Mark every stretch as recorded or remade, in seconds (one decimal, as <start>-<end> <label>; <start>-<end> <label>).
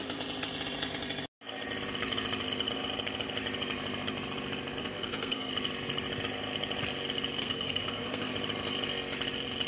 0.0-4.8 recorded; 4.8-5.5 remade; 5.5-7.4 recorded; 7.4-8.3 remade; 8.3-9.7 recorded